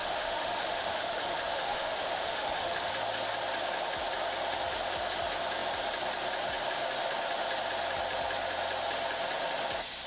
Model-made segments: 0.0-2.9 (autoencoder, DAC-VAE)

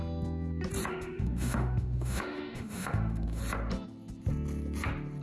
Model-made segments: 0.9-3.4 (autoencoder, DAC-VAE)

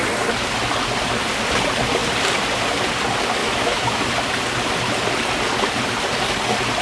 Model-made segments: 3.4-4.0 (autoencoder, DAC-VAE)

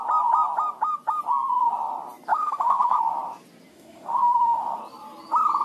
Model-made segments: 2.3-3.0 (autoencoder, DAC-VAE); 3.7-4.8

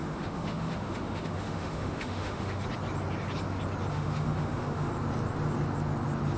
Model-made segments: 0.0-2.6 (autoencoder, DAC-VAE); 3.9-4.9

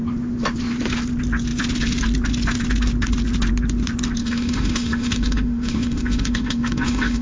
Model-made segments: 4.2-7.2 (autoencoder, DAC-VAE)

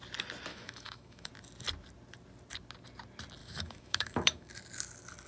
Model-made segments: 0.5-1.3 (autoencoder, DAC-VAE); 3.4-4.5